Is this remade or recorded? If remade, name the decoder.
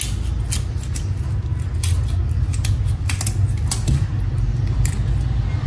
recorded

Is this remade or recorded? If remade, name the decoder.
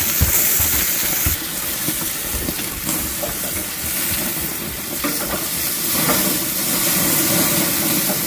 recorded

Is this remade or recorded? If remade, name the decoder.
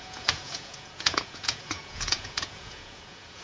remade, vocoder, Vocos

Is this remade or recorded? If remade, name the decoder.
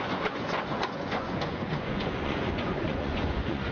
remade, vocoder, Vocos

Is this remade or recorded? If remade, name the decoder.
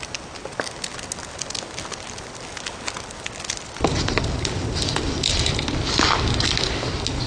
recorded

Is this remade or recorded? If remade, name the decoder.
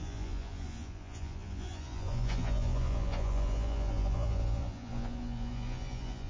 remade, vocoder, Vocos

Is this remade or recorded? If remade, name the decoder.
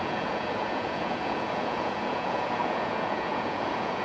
remade, vocoder, Vocos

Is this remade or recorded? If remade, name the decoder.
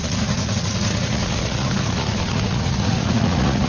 remade, vocoder, Vocos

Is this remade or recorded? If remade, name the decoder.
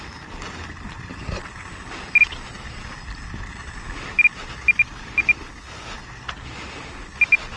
recorded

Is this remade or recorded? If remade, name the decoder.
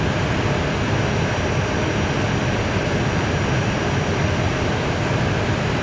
recorded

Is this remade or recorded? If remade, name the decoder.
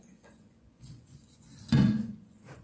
remade, vocoder, Vocos